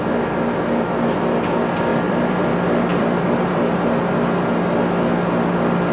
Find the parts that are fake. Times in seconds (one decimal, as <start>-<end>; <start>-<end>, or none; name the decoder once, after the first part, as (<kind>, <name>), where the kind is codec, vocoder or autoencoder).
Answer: 1.9-2.5 (vocoder, BigVGAN v2); 2.9-3.6